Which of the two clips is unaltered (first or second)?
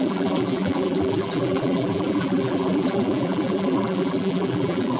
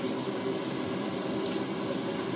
second